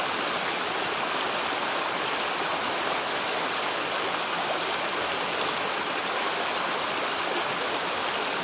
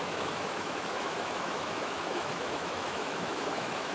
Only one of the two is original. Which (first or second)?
first